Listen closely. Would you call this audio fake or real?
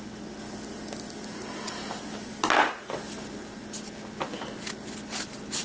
real